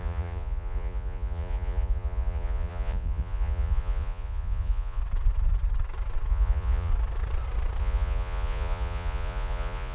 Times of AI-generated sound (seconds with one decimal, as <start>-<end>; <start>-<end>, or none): 0.0-5.0; 6.3-6.9; 7.8-9.9